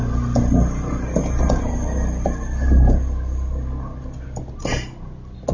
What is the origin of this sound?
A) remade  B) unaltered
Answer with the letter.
B